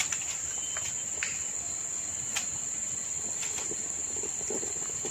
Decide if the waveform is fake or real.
real